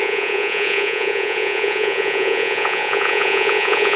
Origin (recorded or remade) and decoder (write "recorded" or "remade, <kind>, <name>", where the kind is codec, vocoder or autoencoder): remade, vocoder, Vocos